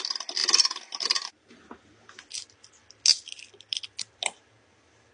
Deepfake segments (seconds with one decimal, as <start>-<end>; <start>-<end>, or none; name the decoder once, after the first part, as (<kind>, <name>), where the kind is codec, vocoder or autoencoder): 0.4-1.5 (vocoder, BigVGAN v2); 3.1-4.0